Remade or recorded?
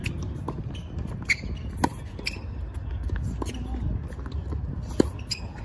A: recorded